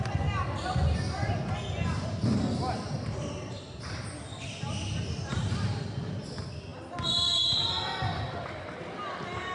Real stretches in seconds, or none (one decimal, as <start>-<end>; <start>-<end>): 0.0-9.5